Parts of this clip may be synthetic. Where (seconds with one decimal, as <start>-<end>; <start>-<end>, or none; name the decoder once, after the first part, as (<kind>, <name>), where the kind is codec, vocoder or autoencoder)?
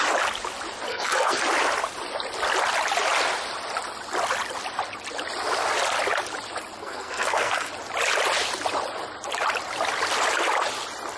0.9-1.4 (codec, SNAC); 6.8-7.7